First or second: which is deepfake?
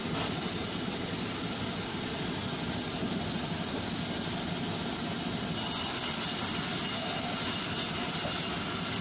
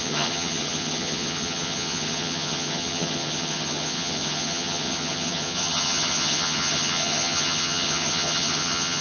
second